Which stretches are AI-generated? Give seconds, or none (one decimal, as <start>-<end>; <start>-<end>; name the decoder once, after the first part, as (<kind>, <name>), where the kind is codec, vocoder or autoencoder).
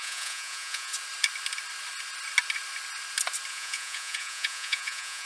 0.0-0.9 (vocoder, Vocos); 3.5-5.3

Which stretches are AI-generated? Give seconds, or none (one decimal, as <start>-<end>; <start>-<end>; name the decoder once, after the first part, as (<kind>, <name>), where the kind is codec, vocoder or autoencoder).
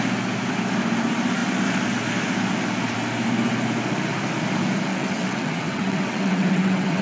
4.9-7.0 (vocoder, WaveNeXt)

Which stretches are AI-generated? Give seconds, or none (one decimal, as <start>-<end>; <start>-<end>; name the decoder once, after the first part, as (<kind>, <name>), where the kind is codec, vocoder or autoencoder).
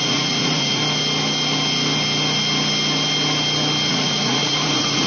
0.0-0.8 (vocoder, Vocos); 3.9-5.1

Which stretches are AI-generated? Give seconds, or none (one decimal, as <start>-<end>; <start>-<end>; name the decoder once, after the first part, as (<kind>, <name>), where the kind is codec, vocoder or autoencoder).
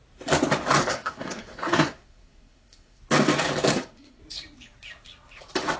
0.8-3.0 (codec, SNAC); 3.7-4.2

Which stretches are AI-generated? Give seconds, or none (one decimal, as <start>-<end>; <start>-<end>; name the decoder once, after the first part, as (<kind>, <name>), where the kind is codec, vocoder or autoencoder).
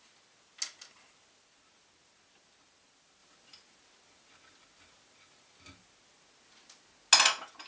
none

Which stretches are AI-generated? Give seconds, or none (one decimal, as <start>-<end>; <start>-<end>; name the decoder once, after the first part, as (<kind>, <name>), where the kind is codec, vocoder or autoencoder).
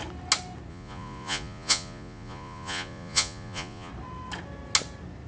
0.7-3.9 (vocoder, Vocos)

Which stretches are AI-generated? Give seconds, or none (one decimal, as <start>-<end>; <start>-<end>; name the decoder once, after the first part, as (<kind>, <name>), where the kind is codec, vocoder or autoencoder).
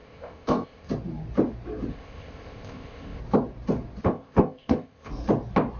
0.0-0.9 (codec, ZipCodec); 1.9-3.2; 4.0-5.1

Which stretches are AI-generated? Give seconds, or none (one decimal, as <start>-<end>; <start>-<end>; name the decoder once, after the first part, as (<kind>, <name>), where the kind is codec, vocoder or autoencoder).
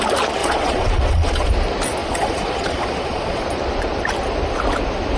0.4-1.5 (vocoder, Vocos); 2.0-3.4